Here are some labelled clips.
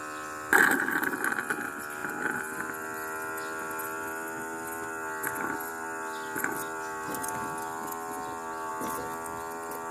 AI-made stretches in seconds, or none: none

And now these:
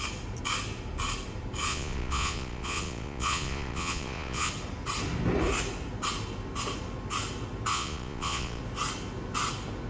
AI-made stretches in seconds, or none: 1.7-4.5 (vocoder, Vocos); 7.7-8.6

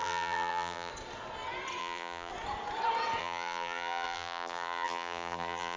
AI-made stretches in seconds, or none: 0.0-0.9 (vocoder, BigVGAN v2); 1.8-2.3; 3.2-5.8

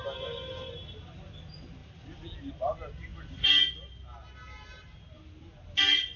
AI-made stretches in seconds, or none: none

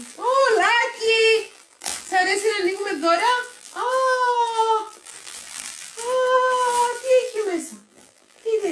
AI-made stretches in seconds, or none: 0.0-0.4 (vocoder, BigVGAN v2); 1.2-8.7

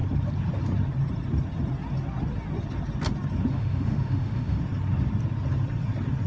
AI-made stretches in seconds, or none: 3.5-4.6 (autoencoder, DAC-VAE)

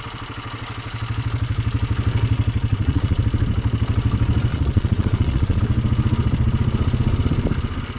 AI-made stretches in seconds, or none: 2.7-3.2 (vocoder, Vocos); 4.5-5.6